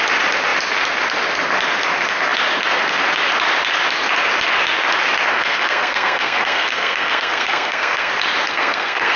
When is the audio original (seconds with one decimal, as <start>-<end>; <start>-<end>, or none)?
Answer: 0.0-5.3; 8.1-8.5